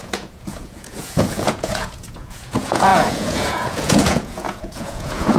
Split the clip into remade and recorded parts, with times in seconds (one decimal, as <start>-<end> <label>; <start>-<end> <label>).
0.0-5.4 remade